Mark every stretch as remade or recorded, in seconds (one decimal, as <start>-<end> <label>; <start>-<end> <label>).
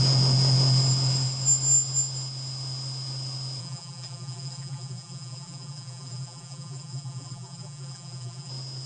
0.0-3.6 recorded; 3.6-8.5 remade; 8.5-8.9 recorded